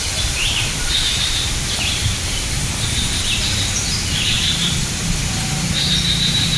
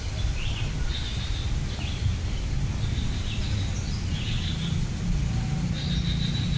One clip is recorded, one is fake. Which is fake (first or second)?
first